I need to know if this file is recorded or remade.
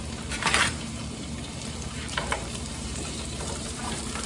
remade